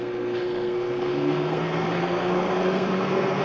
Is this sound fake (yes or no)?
yes